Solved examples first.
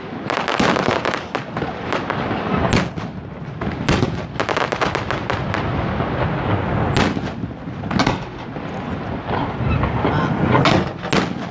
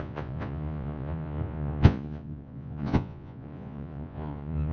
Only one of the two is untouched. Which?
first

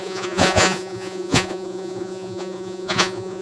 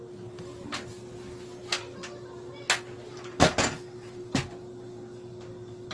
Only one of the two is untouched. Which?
second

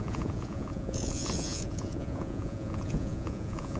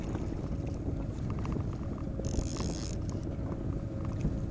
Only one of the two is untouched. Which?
second